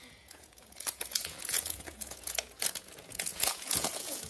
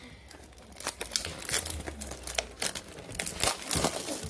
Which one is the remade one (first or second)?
first